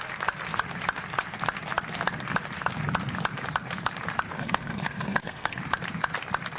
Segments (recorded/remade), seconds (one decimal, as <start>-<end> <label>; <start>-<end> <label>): 0.0-4.3 recorded; 4.3-5.6 remade; 5.6-6.6 recorded